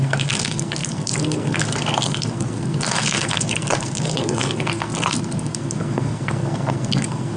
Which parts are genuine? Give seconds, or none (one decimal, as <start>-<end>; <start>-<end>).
none